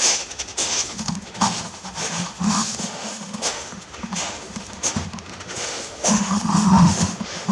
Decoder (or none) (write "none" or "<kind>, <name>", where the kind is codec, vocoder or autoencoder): autoencoder, DAC-VAE